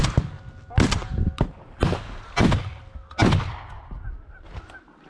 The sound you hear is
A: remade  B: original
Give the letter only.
B